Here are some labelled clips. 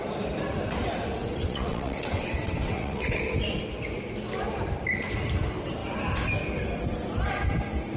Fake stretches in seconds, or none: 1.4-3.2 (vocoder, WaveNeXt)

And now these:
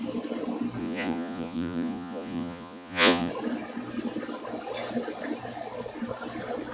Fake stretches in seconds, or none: 0.8-3.3 (vocoder, Vocos)

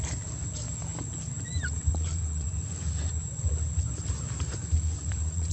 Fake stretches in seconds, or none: 1.8-3.1 (vocoder, Vocos); 4.5-5.5